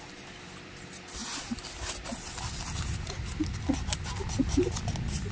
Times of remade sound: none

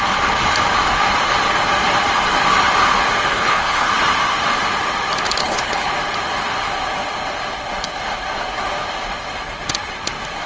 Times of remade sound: 3.3-3.9 (codec, HILCodec); 5.4-5.9

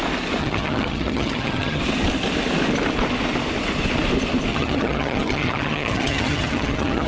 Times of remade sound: 0.4-1.8 (vocoder, HiFi-GAN); 4.5-7.1

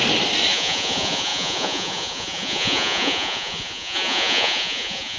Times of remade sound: 0.5-5.2 (vocoder, Vocos)

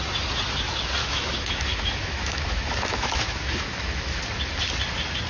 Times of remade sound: 1.0-4.2 (autoencoder, DAC-VAE)